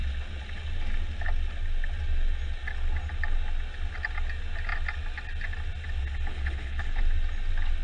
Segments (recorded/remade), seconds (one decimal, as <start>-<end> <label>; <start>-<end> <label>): 0.0-6.3 recorded; 6.3-7.0 remade; 7.0-7.8 recorded